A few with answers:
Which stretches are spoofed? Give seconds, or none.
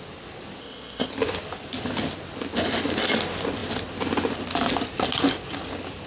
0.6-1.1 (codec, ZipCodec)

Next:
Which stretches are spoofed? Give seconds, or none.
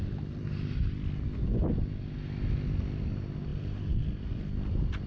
none